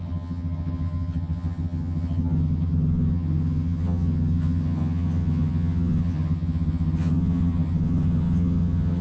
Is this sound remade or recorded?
remade